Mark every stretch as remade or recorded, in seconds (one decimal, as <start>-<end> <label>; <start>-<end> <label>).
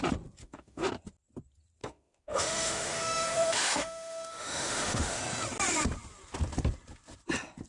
0.0-0.4 recorded; 0.4-0.9 remade; 0.9-1.8 recorded; 1.8-5.2 remade; 5.2-7.7 recorded